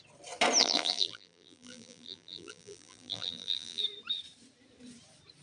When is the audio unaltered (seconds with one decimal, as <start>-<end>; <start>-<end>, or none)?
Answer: 0.0-0.6; 3.8-5.4